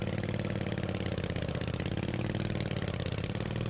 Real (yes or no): yes